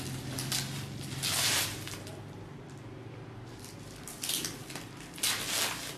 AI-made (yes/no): no